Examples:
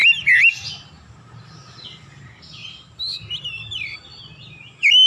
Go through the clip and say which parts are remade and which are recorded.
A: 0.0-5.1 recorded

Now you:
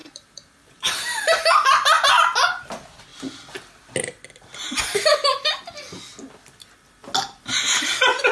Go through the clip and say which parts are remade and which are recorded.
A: 0.0-2.1 remade; 2.1-8.3 recorded

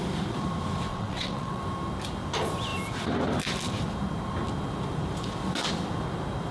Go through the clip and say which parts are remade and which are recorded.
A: 0.0-0.9 recorded; 0.9-1.6 remade; 1.6-6.5 recorded

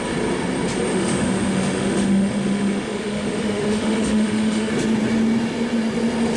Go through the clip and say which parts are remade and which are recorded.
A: 0.0-0.9 recorded; 0.9-4.7 remade; 4.7-6.4 recorded